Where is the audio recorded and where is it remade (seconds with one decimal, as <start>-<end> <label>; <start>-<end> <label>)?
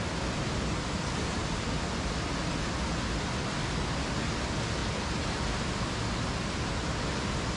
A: 0.0-7.6 recorded